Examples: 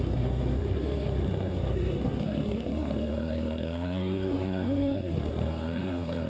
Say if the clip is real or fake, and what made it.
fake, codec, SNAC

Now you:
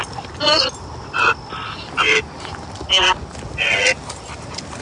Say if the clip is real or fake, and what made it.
real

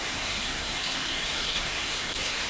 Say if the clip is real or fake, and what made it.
fake, codec, SNAC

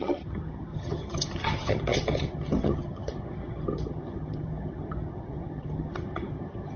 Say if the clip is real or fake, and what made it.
fake, vocoder, HiFi-GAN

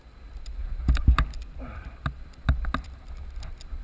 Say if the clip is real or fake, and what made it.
real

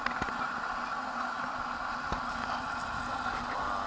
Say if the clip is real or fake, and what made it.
real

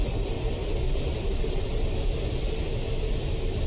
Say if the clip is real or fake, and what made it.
fake, vocoder, BigVGAN v2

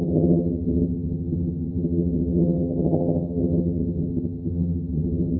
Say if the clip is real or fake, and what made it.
fake, vocoder, HiFi-GAN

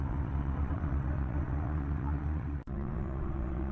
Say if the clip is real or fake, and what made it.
fake, vocoder, WaveNeXt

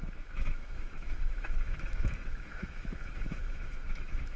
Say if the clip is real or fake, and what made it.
fake, autoencoder, DAC-VAE